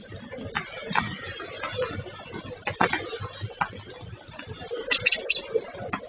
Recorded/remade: recorded